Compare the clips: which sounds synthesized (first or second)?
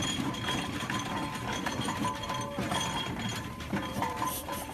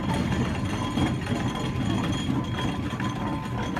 first